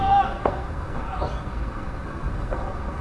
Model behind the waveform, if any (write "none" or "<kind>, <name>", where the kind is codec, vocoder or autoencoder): codec, SNAC